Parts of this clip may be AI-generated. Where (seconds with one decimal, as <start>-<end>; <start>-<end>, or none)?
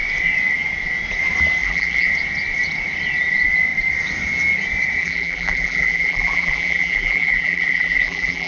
1.6-2.1; 5.0-8.5